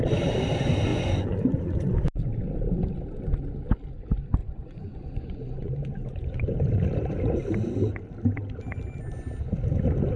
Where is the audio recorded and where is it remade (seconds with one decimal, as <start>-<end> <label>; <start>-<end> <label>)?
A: 0.0-0.9 recorded; 0.9-1.9 remade; 1.9-4.4 recorded; 4.4-6.4 remade; 6.4-10.2 recorded